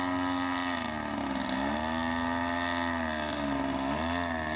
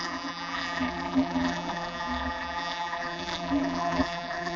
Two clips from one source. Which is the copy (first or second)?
second